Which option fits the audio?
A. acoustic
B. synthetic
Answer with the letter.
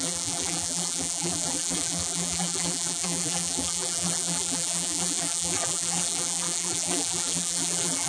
B